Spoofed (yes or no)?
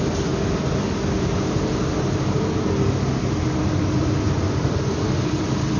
no